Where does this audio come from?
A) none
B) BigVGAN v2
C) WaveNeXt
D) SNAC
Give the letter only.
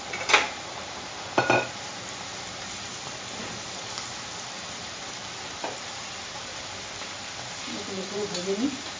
B